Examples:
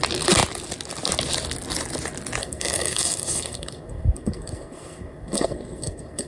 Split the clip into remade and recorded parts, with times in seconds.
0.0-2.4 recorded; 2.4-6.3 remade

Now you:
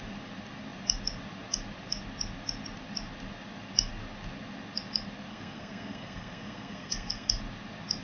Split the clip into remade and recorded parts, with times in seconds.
0.0-5.3 recorded; 5.3-7.3 remade; 7.3-8.0 recorded

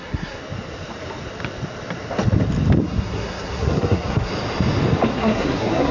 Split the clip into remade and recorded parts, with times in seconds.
0.0-0.4 remade; 0.4-2.8 recorded; 2.8-4.3 remade; 4.3-5.1 recorded; 5.1-5.9 remade

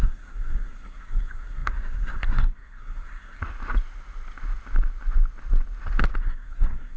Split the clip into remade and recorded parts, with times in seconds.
0.0-3.4 remade; 3.4-6.2 recorded; 6.2-7.0 remade

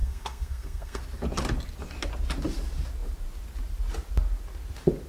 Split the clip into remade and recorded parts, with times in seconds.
0.0-1.0 remade; 1.0-5.1 recorded

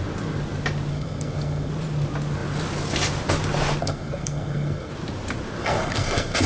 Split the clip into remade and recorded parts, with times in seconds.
0.0-0.9 recorded; 0.9-1.7 remade; 1.7-3.8 recorded; 3.8-4.9 remade; 4.9-5.6 recorded; 5.6-6.5 remade